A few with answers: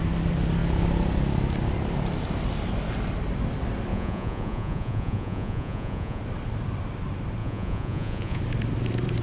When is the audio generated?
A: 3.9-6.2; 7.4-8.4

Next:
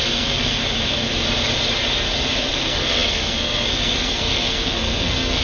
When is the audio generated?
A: 0.0-0.6; 2.5-5.4